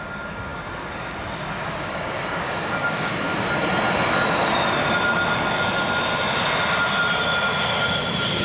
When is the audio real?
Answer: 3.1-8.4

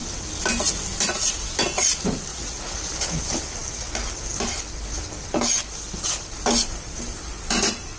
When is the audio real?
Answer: 0.0-2.3; 2.9-8.0

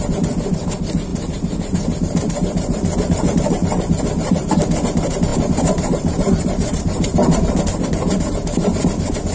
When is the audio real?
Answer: 0.0-1.1; 4.5-5.3; 7.6-9.3